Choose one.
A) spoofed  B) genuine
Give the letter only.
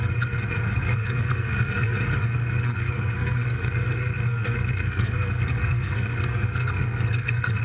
A